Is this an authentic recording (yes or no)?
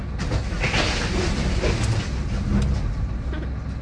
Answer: yes